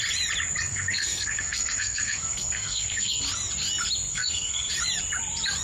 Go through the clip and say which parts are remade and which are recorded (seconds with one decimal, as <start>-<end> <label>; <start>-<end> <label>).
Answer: 0.0-0.7 recorded; 0.7-3.2 remade; 3.2-4.1 recorded; 4.1-4.7 remade; 4.7-5.6 recorded